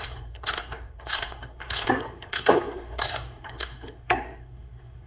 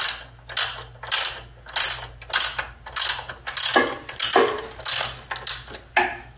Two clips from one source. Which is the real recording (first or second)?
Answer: second